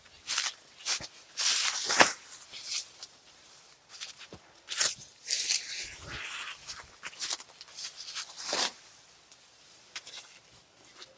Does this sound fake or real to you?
real